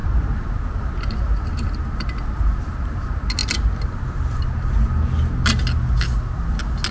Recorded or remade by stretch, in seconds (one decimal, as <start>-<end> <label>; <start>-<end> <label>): 0.0-6.9 recorded

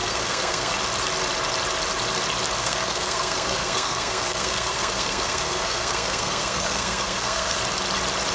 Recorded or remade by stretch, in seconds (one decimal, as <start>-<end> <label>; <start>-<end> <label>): 0.0-0.7 remade; 0.7-2.6 recorded; 2.6-7.6 remade; 7.6-8.3 recorded

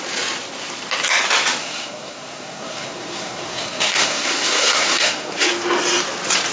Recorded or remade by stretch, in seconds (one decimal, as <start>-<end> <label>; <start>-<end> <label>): 0.0-1.6 recorded; 1.6-5.5 remade; 5.5-6.5 recorded

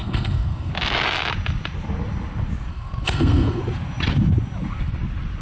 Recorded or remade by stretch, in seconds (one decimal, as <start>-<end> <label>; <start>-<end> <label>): 0.0-0.7 remade; 0.7-2.7 recorded; 2.7-3.6 remade; 3.6-5.4 recorded

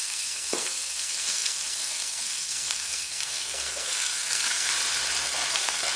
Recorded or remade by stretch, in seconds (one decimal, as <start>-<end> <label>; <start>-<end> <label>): 0.0-4.7 remade; 4.7-5.5 recorded; 5.5-6.0 remade

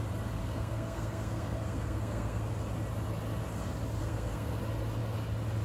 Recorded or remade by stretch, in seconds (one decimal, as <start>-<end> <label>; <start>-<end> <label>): 0.0-0.4 recorded; 0.4-2.5 remade; 2.5-4.0 recorded; 4.0-4.6 remade; 4.6-5.6 recorded